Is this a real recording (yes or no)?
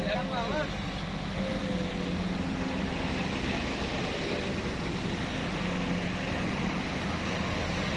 yes